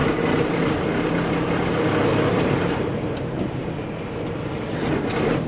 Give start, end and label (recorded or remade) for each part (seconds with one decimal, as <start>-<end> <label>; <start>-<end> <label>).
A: 0.0-0.9 remade; 0.9-2.1 recorded; 2.1-3.1 remade; 3.1-5.5 recorded